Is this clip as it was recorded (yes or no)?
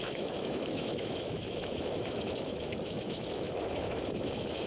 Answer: no